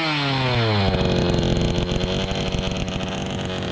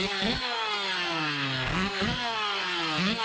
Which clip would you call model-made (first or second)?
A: second